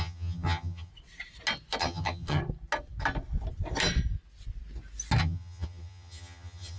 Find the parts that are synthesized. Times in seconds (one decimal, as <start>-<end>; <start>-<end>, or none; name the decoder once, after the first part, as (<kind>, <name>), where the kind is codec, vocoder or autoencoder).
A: 0.0-0.9 (vocoder, HiFi-GAN); 1.8-2.4; 5.2-6.8